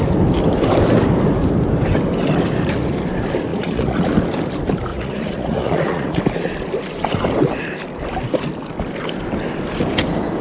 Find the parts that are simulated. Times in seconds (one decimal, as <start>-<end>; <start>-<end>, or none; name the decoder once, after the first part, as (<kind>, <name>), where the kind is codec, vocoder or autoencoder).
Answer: 3.5-4.1 (vocoder, Vocos); 4.9-6.2